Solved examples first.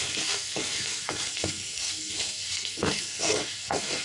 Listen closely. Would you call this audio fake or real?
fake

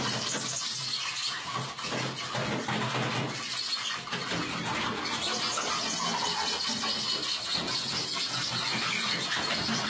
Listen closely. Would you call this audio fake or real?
real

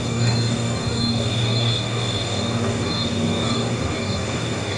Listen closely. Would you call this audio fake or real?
fake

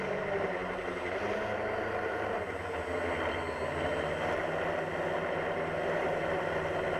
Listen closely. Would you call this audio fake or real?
real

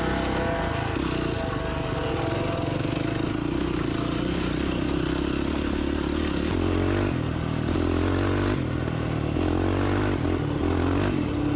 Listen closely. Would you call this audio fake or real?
real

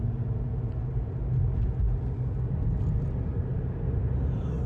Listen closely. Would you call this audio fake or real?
real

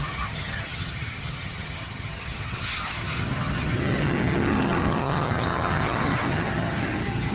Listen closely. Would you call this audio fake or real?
fake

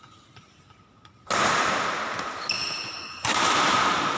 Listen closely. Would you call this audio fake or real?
real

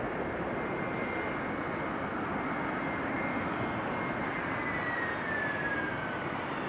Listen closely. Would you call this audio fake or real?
real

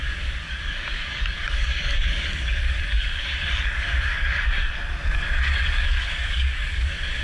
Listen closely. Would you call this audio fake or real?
fake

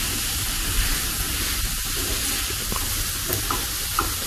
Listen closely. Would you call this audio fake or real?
real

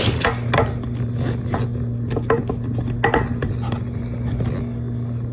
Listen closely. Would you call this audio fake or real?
real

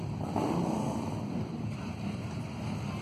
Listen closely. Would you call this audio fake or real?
real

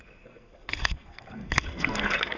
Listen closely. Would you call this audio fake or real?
fake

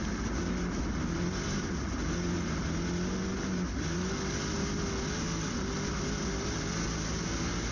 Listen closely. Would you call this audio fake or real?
real